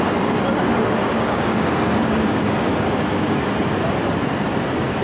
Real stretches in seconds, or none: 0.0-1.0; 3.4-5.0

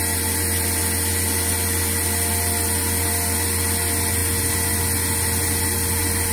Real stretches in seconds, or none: 0.0-6.3

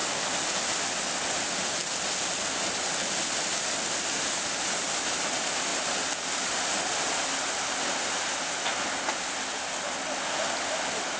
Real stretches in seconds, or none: 0.0-11.2

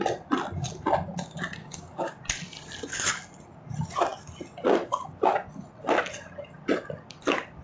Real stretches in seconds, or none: 0.0-1.6; 2.2-7.6

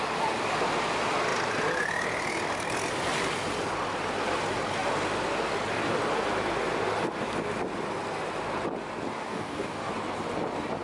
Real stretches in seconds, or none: 0.0-9.3; 9.9-10.8

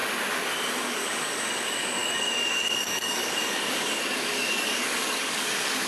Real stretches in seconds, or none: 0.0-0.7

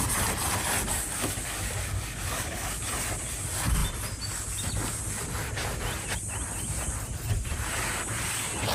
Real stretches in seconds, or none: 0.0-0.9; 2.8-8.7